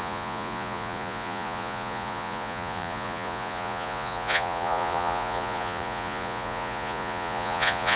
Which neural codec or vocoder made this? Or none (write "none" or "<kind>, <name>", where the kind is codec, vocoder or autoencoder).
vocoder, Vocos